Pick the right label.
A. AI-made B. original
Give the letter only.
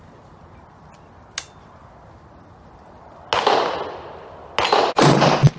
B